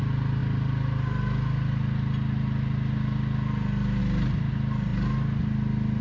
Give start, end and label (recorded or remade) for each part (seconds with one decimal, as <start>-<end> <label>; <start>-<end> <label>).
0.0-6.0 recorded